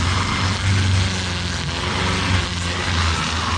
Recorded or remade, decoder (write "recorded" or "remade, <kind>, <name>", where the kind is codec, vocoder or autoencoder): recorded